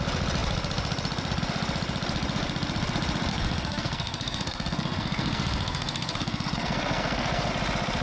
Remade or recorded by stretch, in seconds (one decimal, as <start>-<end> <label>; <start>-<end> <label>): 0.0-3.3 recorded; 3.3-7.5 remade; 7.5-8.0 recorded